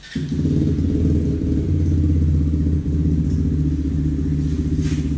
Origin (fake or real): real